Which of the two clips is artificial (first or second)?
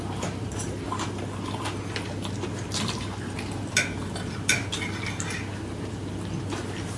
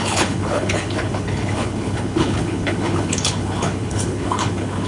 second